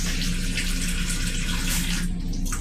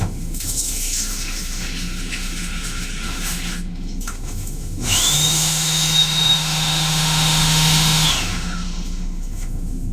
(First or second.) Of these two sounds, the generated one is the second